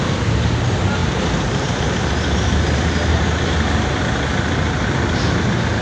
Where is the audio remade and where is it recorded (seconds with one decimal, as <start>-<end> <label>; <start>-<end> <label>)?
0.0-1.0 recorded; 1.0-4.0 remade; 4.0-5.8 recorded